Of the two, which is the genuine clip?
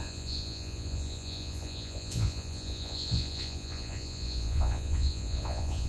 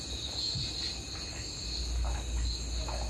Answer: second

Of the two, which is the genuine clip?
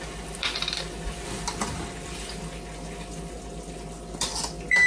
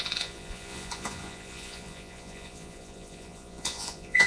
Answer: first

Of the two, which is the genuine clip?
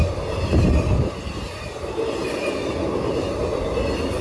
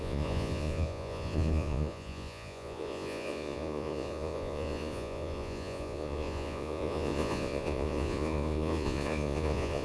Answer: first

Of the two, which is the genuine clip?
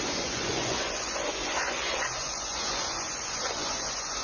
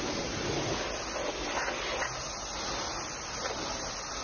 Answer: second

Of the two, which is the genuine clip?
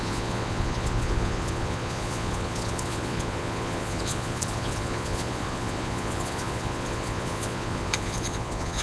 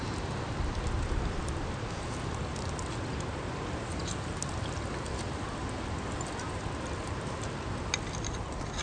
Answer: second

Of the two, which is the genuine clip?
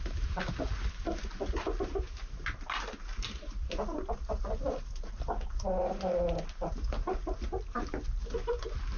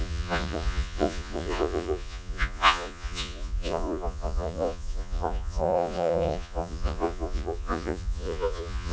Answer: first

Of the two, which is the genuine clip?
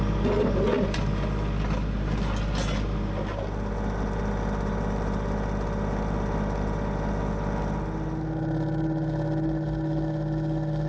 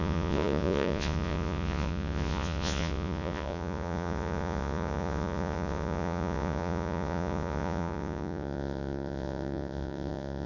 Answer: first